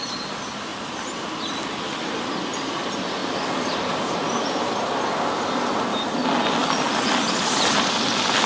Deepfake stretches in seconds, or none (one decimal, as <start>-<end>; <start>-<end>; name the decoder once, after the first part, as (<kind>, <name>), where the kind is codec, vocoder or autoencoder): none